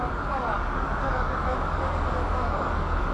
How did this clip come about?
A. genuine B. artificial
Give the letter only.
B